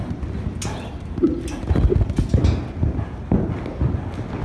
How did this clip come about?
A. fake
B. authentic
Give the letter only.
B